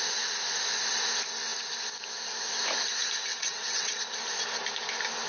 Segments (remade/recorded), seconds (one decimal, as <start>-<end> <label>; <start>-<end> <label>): 0.0-3.3 recorded; 3.3-4.0 remade; 4.0-5.3 recorded

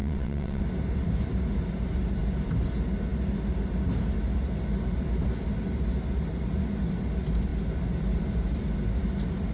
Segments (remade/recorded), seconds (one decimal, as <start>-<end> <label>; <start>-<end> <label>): 0.0-0.6 remade; 0.6-9.5 recorded

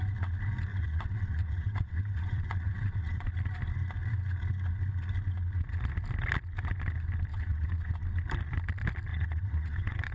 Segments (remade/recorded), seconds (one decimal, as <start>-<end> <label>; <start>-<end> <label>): 0.0-0.7 recorded; 0.7-3.3 remade; 3.3-7.3 recorded; 7.3-7.9 remade; 7.9-9.1 recorded; 9.1-10.1 remade

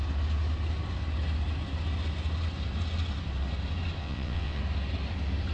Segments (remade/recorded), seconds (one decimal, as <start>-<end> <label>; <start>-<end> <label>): 0.0-4.0 recorded; 4.0-4.6 remade; 4.6-5.5 recorded

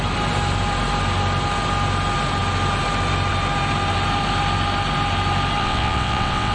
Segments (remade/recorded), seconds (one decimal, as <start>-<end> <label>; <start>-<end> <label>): 0.0-5.6 recorded; 5.6-6.5 remade

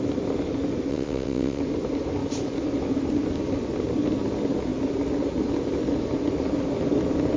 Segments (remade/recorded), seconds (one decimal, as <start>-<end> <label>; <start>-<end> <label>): 0.0-0.9 recorded; 0.9-1.6 remade; 1.6-7.4 recorded

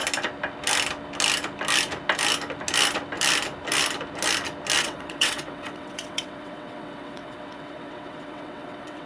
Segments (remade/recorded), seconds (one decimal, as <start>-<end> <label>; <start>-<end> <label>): 0.0-4.8 recorded; 4.8-9.1 remade